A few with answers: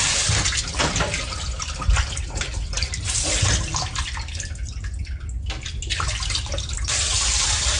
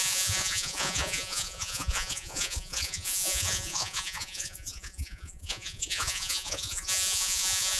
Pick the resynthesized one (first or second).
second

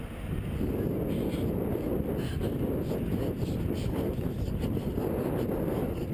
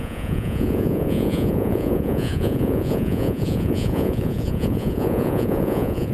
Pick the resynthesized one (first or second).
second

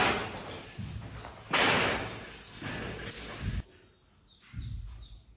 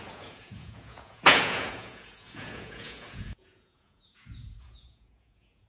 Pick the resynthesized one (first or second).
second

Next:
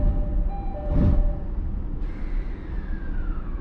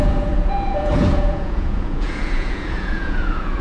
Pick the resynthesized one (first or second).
second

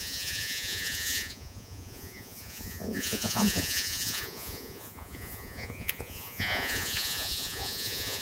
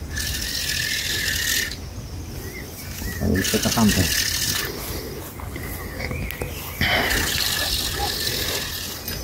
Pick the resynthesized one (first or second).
first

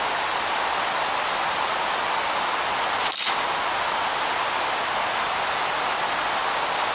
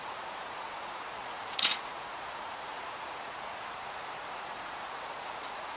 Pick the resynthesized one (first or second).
second